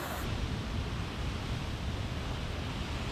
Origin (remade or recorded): recorded